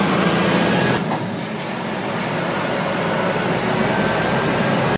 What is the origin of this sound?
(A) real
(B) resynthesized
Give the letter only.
A